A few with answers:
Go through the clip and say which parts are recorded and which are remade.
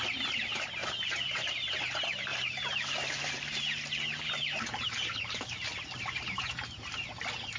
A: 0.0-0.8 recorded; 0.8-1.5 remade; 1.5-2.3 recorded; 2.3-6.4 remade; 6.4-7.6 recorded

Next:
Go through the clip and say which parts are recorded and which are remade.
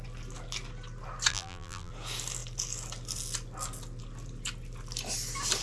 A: 0.0-1.3 recorded; 1.3-1.9 remade; 1.9-5.6 recorded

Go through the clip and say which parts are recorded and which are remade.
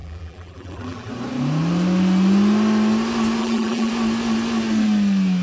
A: 0.0-1.1 remade; 1.1-3.4 recorded; 3.4-3.9 remade; 3.9-5.4 recorded